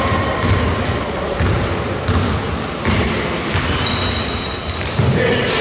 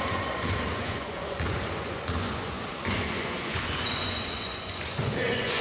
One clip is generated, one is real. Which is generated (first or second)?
second